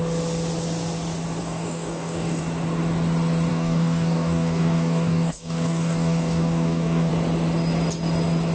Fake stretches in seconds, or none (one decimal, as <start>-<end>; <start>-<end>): 1.4-2.4; 3.5-7.1